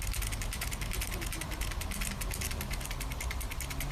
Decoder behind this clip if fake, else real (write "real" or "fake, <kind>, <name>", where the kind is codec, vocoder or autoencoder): real